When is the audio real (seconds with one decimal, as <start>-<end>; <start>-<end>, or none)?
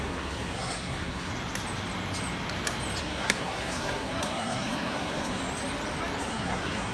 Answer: 1.3-3.0; 5.4-6.2